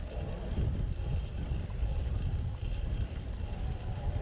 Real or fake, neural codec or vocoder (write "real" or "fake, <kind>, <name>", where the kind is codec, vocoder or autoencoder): fake, vocoder, BigVGAN v2